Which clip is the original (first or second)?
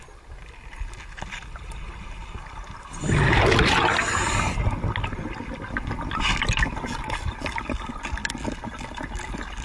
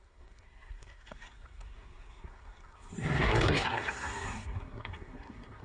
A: first